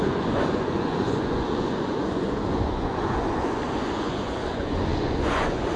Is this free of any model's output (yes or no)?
no